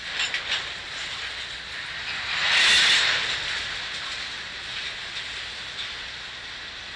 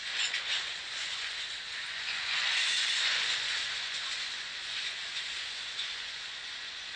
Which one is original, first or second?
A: first